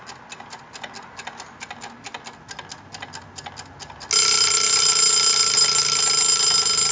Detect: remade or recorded recorded